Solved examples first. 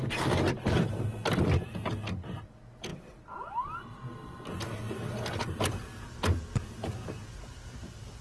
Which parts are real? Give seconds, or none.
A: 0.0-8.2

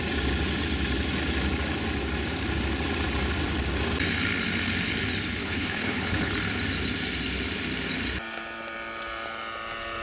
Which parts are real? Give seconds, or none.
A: 0.0-5.4; 6.3-10.0

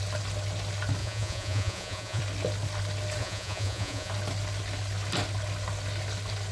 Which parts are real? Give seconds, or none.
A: 0.0-1.0; 2.2-3.2; 4.1-6.5

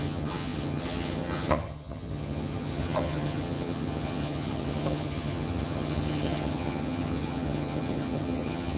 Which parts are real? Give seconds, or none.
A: none

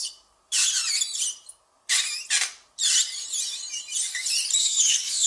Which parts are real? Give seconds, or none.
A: 0.0-4.6